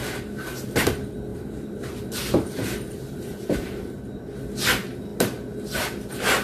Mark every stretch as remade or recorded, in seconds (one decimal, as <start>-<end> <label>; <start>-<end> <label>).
0.0-0.6 remade; 0.6-1.3 recorded; 1.3-4.0 remade; 4.0-6.4 recorded